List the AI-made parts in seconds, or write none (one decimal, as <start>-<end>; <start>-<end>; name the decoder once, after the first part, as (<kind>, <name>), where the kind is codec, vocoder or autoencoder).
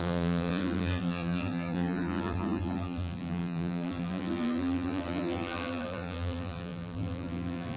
0.0-7.8 (vocoder, BigVGAN v2)